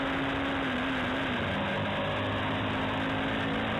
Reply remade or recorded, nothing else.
recorded